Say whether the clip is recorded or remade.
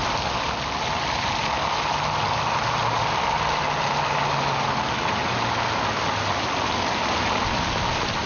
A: recorded